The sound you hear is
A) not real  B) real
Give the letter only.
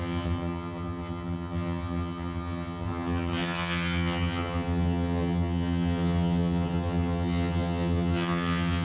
A